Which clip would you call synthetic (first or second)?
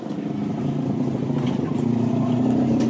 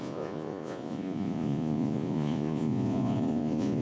second